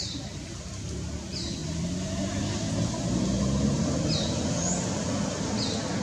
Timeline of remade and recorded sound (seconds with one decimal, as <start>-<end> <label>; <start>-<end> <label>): 0.0-6.0 recorded